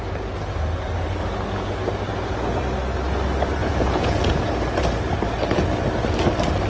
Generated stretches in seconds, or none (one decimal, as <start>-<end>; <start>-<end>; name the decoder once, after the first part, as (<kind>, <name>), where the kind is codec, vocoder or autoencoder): 3.6-4.4 (vocoder, Vocos)